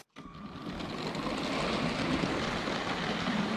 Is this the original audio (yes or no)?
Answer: yes